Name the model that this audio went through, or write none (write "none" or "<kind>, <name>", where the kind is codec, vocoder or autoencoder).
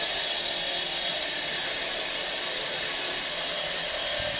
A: none